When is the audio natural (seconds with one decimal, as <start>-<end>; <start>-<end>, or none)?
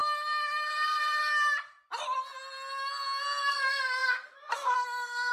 0.0-0.7; 1.2-3.5